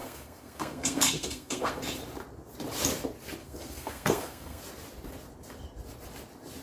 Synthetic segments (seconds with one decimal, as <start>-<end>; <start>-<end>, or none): 0.0-1.8; 3.4-4.6